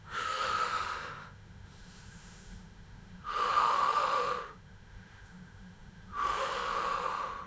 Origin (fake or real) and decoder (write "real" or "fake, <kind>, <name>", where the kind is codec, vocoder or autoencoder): fake, autoencoder, DAC-VAE